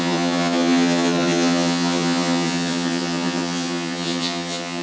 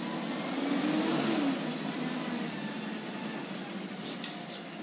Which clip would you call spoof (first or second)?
first